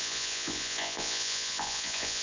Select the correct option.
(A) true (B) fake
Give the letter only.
B